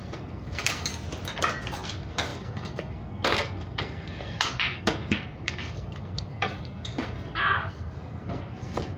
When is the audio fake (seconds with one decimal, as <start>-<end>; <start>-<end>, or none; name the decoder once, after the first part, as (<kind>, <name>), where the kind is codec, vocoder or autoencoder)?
0.0-0.9 (codec, SNAC); 1.6-9.0